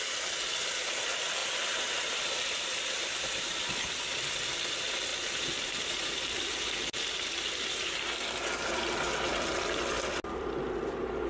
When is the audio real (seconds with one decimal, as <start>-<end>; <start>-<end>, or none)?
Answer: 0.0-1.4; 4.2-5.1; 8.4-11.3